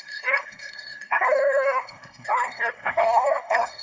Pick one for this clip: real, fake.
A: fake